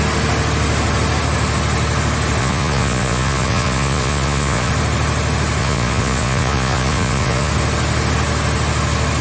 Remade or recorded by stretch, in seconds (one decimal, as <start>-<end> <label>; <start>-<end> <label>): 0.0-2.4 recorded; 2.4-4.7 remade; 4.7-5.6 recorded; 5.6-7.5 remade; 7.5-9.2 recorded